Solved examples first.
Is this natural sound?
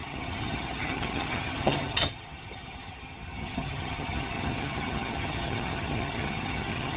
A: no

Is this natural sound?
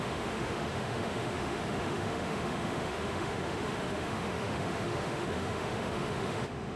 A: no